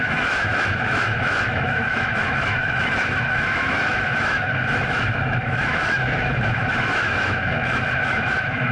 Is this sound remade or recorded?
remade